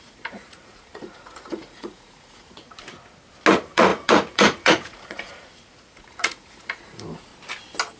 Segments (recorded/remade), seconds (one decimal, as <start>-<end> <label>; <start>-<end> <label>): 0.0-2.7 remade; 2.7-3.5 recorded; 3.5-7.3 remade; 7.3-8.0 recorded